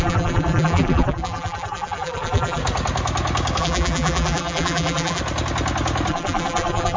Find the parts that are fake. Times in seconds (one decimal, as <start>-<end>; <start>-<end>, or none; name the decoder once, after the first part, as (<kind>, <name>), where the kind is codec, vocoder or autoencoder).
0.0-2.6 (vocoder, BigVGAN v2); 3.6-5.2; 6.1-7.0